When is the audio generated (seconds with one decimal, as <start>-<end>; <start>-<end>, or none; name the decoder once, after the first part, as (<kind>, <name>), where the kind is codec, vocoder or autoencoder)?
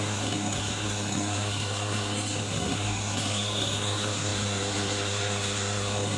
0.0-6.2 (codec, SNAC)